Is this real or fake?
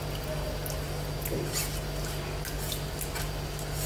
real